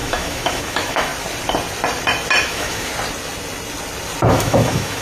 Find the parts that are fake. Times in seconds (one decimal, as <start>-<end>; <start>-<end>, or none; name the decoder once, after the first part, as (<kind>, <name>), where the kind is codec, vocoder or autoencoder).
0.0-1.1 (autoencoder, DAC-VAE); 2.4-2.9; 4.3-5.0